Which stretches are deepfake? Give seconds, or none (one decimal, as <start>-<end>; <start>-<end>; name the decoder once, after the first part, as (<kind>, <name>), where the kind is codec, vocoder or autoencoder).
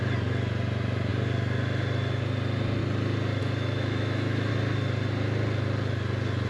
3.4-4.5 (autoencoder, DAC-VAE)